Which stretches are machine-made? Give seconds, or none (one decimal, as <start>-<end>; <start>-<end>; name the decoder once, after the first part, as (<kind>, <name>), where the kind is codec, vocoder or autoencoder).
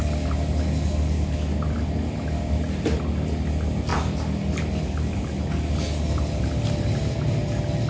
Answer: none